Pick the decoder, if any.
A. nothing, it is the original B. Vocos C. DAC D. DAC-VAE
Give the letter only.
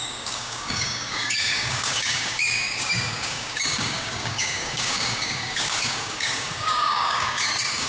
C